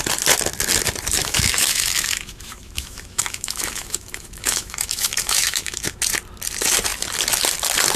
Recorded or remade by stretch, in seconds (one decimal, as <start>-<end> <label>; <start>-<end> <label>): 0.0-1.2 recorded; 1.2-6.0 remade; 6.0-8.0 recorded